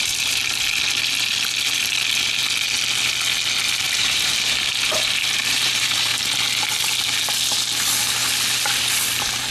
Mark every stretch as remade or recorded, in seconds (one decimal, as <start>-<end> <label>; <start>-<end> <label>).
0.0-0.4 remade; 0.4-3.8 recorded; 3.8-6.1 remade; 6.1-9.5 recorded